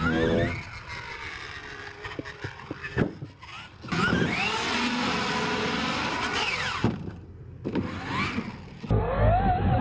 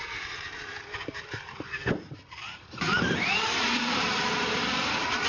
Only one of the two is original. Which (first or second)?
first